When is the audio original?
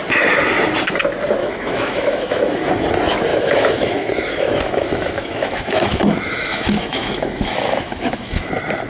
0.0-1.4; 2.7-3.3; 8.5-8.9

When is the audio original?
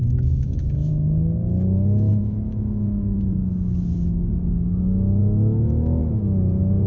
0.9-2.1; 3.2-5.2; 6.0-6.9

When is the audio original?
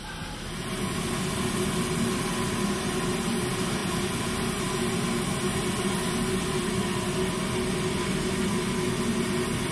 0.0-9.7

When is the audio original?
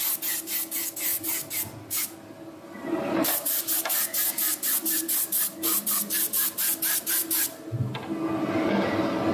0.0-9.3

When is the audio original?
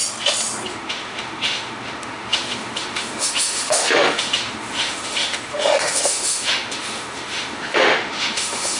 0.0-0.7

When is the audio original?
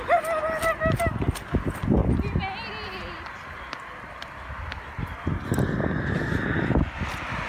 0.0-7.5